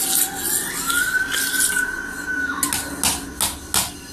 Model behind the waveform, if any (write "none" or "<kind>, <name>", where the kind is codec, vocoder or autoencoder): none